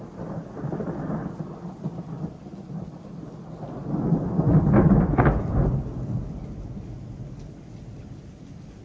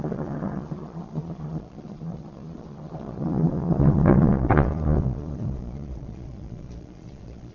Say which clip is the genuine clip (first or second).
first